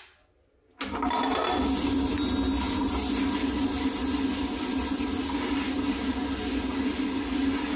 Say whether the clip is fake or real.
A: real